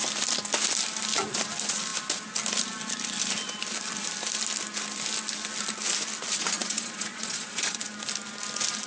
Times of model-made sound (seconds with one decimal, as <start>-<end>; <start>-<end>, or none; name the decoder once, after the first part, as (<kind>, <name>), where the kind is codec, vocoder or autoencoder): 6.4-7.8 (vocoder, Vocos)